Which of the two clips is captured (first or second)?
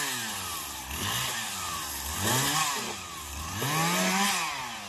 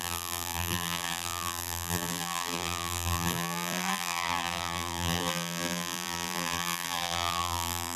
first